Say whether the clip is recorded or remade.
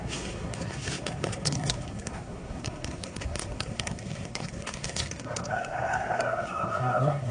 remade